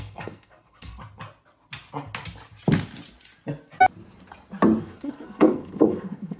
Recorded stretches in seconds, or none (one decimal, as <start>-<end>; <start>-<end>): 1.0-4.8